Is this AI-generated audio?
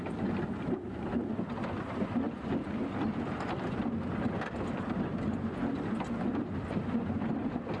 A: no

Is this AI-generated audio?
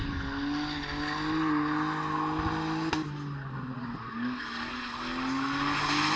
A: no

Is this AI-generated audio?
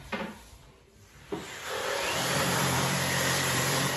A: yes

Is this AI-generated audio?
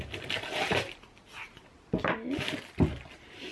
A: no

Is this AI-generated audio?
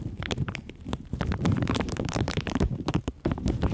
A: yes